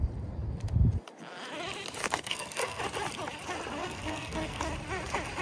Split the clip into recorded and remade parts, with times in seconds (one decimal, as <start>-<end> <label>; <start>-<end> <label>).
0.0-2.0 recorded; 2.0-2.8 remade; 2.8-3.8 recorded; 3.8-4.6 remade; 4.6-5.4 recorded

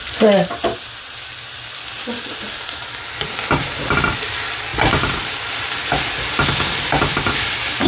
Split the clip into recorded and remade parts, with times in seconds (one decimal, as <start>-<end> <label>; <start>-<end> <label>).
0.0-4.1 recorded; 4.1-7.9 remade

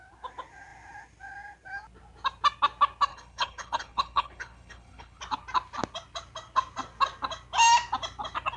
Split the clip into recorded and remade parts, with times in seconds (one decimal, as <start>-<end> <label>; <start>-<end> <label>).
0.0-3.1 recorded; 3.1-5.2 remade; 5.2-8.6 recorded

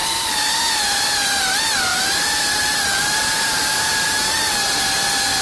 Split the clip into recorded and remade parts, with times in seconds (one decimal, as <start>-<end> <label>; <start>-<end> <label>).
0.0-1.0 remade; 1.0-1.9 recorded; 1.9-4.4 remade; 4.4-5.4 recorded

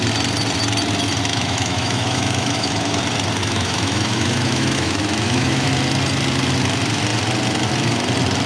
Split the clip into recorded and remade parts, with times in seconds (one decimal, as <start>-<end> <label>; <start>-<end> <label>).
0.0-1.3 recorded; 1.3-3.0 remade; 3.0-3.4 recorded; 3.4-5.7 remade; 5.7-8.5 recorded

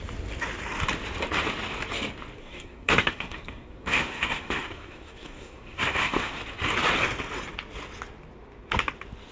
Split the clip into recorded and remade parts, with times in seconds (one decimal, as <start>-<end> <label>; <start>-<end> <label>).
0.0-2.4 recorded; 2.4-6.4 remade; 6.4-9.3 recorded

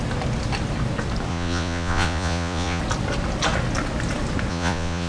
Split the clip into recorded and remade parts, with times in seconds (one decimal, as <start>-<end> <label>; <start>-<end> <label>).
0.0-1.3 recorded; 1.3-2.8 remade; 2.8-4.5 recorded; 4.5-5.1 remade